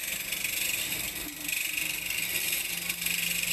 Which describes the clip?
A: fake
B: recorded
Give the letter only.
B